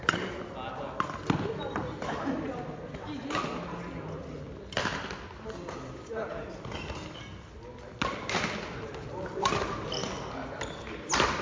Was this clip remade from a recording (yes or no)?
no